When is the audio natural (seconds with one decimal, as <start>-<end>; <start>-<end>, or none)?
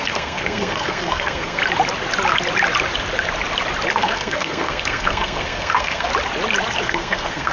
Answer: 1.6-3.9; 6.1-6.8